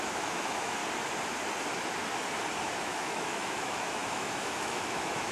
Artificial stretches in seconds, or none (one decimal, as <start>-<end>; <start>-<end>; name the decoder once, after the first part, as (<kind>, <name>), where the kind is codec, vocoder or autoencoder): 0.0-0.8 (autoencoder, DAC-VAE); 2.6-5.3